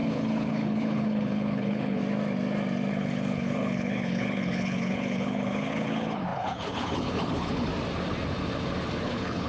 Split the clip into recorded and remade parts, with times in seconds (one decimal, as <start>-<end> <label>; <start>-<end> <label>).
0.0-2.0 remade; 2.0-2.9 recorded; 2.9-7.7 remade; 7.7-9.0 recorded; 9.0-9.5 remade